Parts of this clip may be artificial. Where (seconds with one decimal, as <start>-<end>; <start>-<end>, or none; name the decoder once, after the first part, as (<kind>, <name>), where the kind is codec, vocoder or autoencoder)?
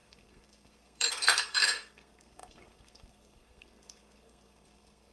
0.0-5.1 (codec, SNAC)